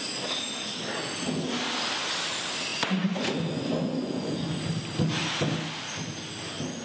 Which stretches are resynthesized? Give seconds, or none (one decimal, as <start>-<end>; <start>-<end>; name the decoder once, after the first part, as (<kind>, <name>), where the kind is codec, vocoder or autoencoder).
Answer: 2.7-4.6 (vocoder, Vocos)